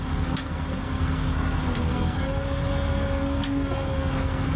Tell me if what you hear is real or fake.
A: fake